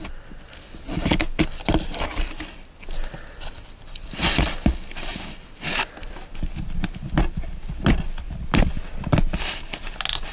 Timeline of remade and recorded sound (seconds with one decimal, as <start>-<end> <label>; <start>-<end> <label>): 0.0-10.3 recorded